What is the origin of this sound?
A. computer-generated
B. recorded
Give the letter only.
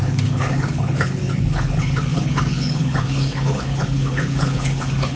A